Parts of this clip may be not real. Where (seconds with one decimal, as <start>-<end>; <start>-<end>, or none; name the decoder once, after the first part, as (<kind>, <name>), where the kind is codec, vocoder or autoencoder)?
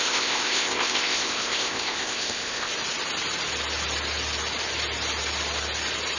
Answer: 0.0-2.7 (codec, ZipCodec)